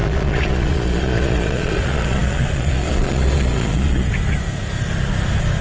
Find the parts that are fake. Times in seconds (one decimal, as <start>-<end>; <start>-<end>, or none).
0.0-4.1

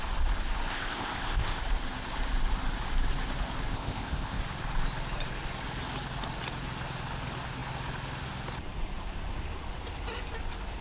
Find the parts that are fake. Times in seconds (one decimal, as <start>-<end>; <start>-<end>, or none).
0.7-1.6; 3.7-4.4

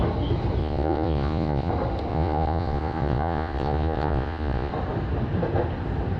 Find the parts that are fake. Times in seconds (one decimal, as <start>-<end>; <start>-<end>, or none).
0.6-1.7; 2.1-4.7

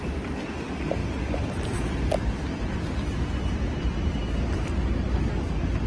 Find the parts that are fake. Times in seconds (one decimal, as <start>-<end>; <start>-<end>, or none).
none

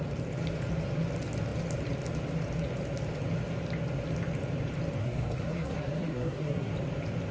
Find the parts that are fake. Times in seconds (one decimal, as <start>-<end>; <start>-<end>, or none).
5.0-6.7

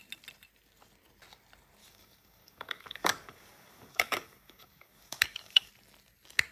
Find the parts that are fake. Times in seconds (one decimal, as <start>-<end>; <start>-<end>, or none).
1.8-5.7